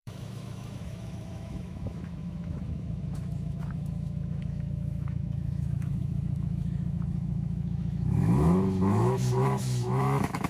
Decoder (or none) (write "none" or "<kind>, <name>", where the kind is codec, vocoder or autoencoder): autoencoder, DAC-VAE